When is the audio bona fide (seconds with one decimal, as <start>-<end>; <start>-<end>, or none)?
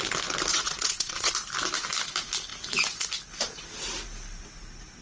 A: 0.0-0.5; 1.3-5.0